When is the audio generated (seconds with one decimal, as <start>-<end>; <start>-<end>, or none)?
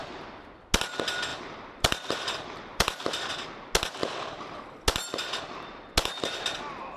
1.3-3.3; 4.0-4.6